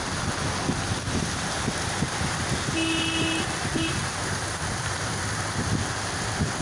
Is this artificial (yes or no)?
no